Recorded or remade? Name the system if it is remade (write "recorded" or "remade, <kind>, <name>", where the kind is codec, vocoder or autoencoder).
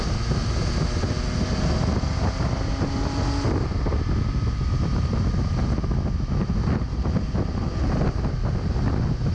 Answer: recorded